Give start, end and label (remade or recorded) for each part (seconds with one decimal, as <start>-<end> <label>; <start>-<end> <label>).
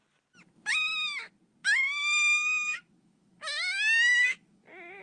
0.0-1.6 recorded; 1.6-4.6 remade; 4.6-5.0 recorded